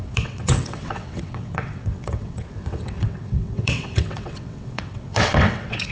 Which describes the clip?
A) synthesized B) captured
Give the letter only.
A